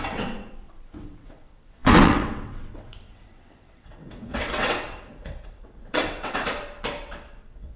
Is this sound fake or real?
fake